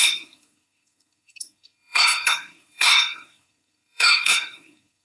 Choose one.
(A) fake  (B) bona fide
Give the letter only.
A